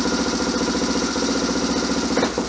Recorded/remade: recorded